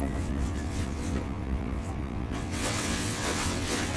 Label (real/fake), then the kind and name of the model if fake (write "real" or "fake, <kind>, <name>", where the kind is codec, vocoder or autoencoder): fake, vocoder, WaveNeXt